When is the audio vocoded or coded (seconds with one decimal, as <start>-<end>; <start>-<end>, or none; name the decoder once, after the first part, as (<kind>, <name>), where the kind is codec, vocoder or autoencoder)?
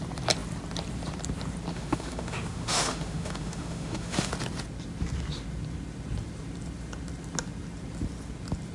1.7-4.3 (autoencoder, DAC-VAE)